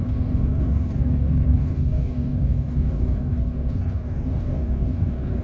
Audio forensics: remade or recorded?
remade